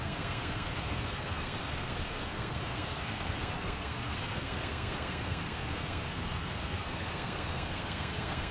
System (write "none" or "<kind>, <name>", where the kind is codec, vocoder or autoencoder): codec, SNAC